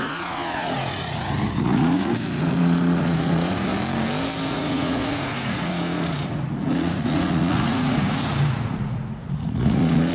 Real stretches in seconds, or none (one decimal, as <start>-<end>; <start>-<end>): 3.7-4.5